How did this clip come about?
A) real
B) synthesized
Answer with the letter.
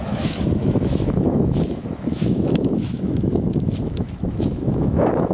B